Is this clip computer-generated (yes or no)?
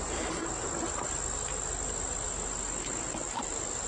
no